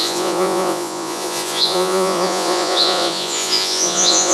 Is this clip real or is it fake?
fake